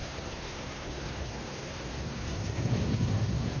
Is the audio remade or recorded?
remade